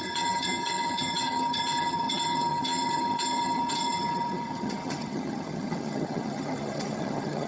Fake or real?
fake